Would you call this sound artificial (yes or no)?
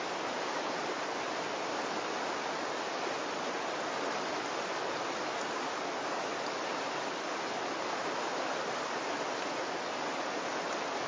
no